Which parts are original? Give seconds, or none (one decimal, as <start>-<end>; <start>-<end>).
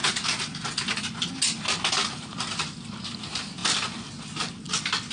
0.0-5.1